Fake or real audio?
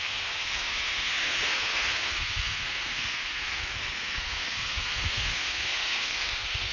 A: fake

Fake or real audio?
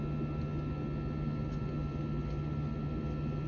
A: real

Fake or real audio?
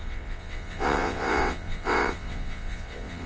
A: fake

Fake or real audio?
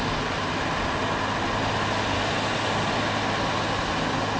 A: real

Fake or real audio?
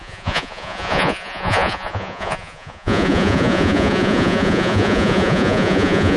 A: fake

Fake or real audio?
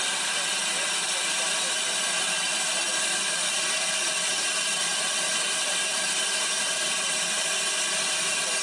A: fake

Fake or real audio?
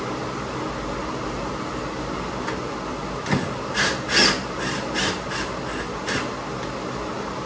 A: real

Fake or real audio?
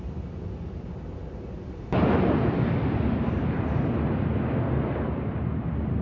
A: real